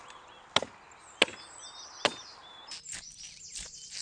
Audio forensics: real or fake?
real